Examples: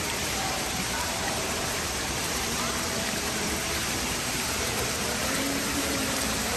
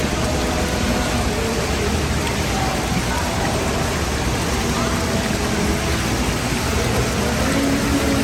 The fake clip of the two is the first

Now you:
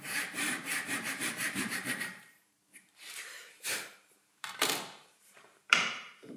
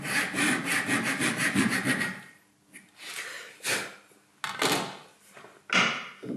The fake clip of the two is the first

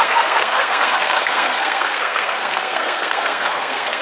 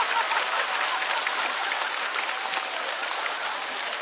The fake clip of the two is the first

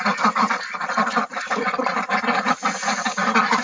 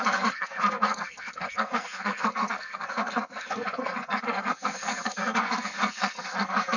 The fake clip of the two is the second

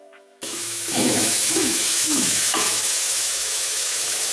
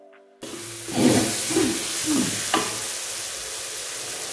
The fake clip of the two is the first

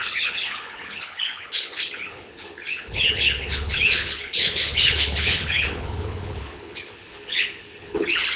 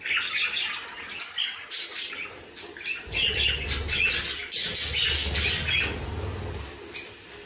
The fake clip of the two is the first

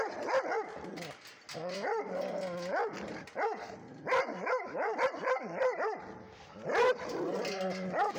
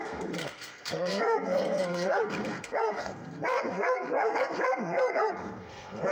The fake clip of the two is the second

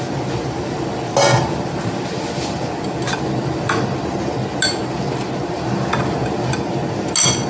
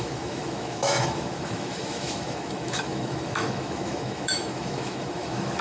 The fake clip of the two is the second